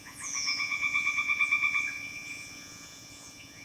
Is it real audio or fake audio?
fake